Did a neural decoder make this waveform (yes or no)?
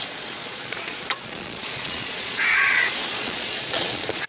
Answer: yes